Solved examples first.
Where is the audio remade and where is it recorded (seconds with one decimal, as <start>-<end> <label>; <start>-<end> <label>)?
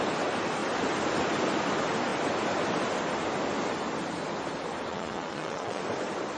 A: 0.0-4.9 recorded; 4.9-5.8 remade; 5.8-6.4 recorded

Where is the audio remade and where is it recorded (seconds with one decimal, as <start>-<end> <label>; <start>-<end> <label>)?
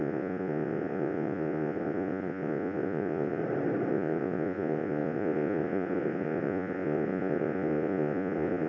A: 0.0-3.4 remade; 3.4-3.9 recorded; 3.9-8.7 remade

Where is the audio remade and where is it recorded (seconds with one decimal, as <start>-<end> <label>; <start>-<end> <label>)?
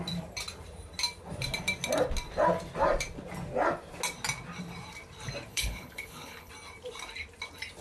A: 0.0-5.5 recorded; 5.5-6.5 remade; 6.5-7.8 recorded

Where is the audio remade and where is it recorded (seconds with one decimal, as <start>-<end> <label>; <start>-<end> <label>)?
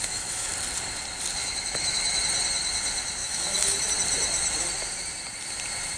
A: 0.0-0.5 remade; 0.5-1.4 recorded; 1.4-2.2 remade; 2.2-3.2 recorded; 3.2-3.9 remade; 3.9-6.0 recorded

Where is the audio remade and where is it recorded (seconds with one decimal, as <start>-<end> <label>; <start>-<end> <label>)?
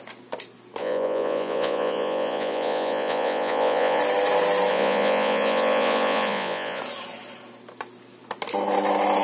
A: 0.0-0.8 recorded; 0.8-4.0 remade; 4.0-4.7 recorded; 4.7-6.8 remade; 6.8-9.2 recorded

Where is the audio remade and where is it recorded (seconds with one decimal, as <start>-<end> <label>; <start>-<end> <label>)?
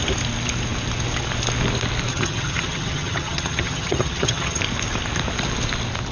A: 0.0-2.1 recorded; 2.1-4.6 remade; 4.6-6.1 recorded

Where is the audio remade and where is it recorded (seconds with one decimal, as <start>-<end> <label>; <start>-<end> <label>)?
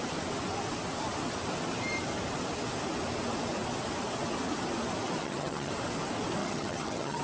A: 0.0-5.2 recorded; 5.2-5.7 remade; 5.7-6.4 recorded; 6.4-7.2 remade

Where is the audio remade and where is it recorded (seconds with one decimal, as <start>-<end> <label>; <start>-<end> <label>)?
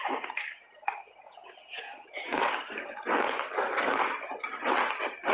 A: 0.0-1.0 recorded; 1.0-2.4 remade; 2.4-5.3 recorded